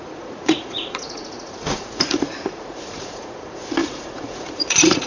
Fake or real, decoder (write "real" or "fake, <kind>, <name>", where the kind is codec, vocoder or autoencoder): fake, vocoder, Vocos